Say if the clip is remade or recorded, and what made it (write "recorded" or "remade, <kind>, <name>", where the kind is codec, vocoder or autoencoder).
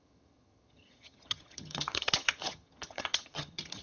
remade, vocoder, HiFi-GAN